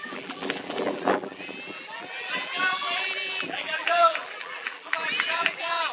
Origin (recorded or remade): remade